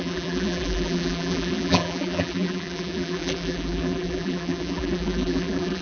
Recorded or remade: remade